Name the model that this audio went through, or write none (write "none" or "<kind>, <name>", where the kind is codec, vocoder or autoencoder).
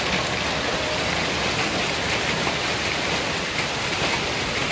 none